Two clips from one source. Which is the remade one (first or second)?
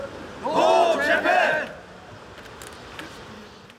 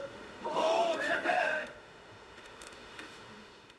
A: second